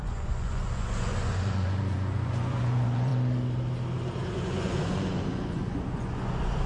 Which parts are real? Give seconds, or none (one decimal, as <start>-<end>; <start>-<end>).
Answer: 3.1-4.3